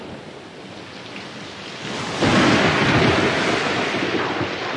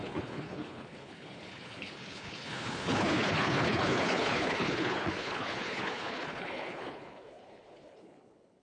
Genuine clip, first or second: first